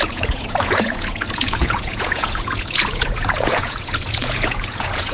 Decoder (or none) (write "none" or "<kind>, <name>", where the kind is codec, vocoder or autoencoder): vocoder, Vocos